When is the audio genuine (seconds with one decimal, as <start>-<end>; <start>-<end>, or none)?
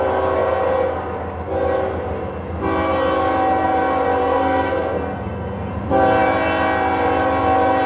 0.0-4.2; 5.7-7.9